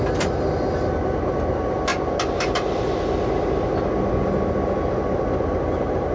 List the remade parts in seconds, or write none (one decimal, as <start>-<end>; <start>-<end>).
none